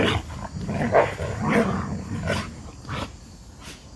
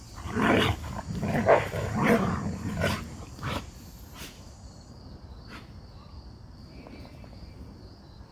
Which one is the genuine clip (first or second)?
first